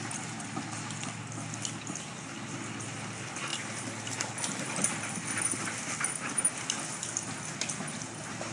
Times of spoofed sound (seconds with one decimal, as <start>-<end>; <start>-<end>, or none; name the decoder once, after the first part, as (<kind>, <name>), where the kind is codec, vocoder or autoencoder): none